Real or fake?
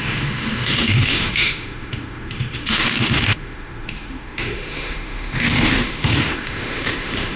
fake